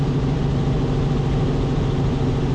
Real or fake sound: real